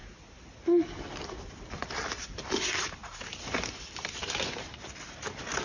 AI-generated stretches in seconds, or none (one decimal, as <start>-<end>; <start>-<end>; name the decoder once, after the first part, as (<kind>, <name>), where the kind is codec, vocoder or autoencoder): none